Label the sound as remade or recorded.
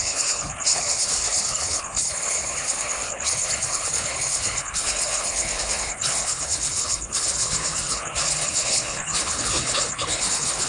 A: remade